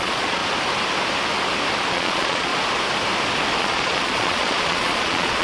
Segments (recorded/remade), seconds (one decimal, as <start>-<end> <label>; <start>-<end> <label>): 0.0-0.4 remade; 0.4-1.9 recorded; 1.9-2.5 remade; 2.5-3.6 recorded; 3.6-5.4 remade